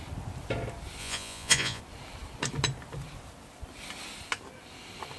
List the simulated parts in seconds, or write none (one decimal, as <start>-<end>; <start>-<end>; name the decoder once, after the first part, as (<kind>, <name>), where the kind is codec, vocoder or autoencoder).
1.0-1.8 (vocoder, Vocos)